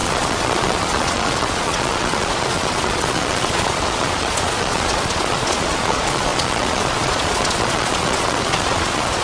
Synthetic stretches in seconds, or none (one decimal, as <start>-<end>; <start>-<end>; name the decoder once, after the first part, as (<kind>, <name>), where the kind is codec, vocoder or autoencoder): 0.0-9.2 (vocoder, Vocos)